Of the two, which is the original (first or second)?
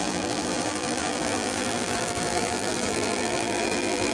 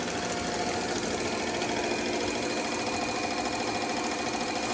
second